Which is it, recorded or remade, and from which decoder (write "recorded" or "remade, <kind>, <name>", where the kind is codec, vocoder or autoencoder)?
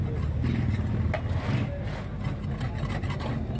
recorded